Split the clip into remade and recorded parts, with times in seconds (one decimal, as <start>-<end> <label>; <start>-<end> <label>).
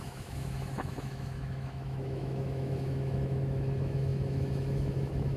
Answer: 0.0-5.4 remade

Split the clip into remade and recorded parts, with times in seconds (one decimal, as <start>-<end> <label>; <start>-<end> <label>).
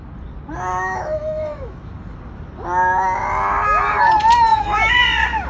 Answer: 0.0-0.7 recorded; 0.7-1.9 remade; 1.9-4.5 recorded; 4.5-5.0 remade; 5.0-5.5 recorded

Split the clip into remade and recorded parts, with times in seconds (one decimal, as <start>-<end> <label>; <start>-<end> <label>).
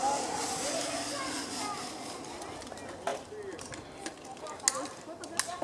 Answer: 0.0-5.6 recorded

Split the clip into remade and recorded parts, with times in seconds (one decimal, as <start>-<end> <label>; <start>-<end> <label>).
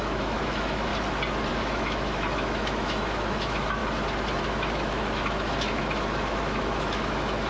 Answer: 0.0-0.9 remade; 0.9-1.5 recorded; 1.5-3.8 remade; 3.8-4.4 recorded; 4.4-7.5 remade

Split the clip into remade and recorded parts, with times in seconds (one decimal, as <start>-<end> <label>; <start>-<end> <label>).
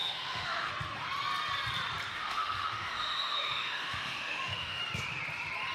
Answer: 0.0-0.7 remade; 0.7-2.1 recorded; 2.1-4.8 remade; 4.8-5.7 recorded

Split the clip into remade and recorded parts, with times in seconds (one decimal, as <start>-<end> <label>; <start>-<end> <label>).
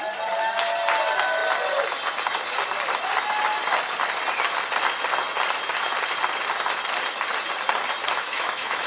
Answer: 0.0-8.0 recorded; 8.0-8.9 remade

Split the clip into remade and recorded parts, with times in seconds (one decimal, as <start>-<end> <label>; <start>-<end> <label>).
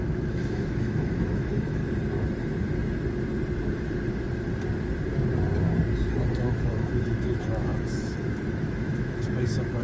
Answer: 0.0-1.8 remade; 1.8-6.3 recorded; 6.3-9.8 remade